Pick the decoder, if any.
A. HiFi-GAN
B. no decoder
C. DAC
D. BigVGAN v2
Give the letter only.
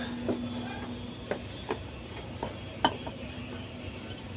B